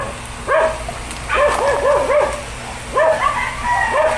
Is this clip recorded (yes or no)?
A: yes